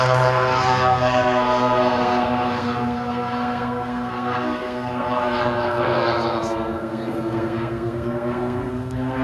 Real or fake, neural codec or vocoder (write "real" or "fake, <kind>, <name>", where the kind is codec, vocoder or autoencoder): fake, codec, SNAC